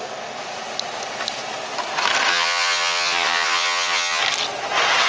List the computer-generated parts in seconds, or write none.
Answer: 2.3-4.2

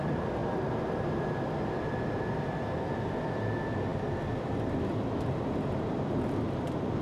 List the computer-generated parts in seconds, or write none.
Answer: none

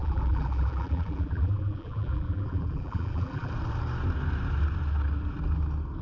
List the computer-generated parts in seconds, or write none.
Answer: 0.0-3.5

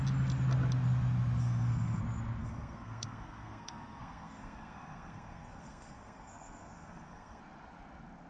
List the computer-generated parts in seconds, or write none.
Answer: 1.4-2.0; 2.4-7.4